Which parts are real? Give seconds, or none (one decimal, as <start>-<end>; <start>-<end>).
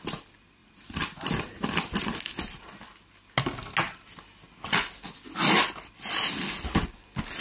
0.0-7.4